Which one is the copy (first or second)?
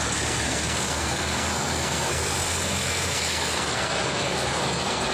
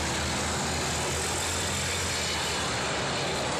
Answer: first